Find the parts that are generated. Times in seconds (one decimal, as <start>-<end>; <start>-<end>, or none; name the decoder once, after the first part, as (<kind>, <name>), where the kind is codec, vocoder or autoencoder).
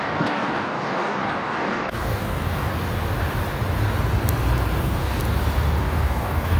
0.0-2.7 (codec, DAC); 4.8-5.2; 5.8-6.6